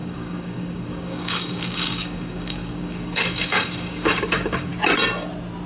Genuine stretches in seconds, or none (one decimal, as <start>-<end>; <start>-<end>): 4.7-5.7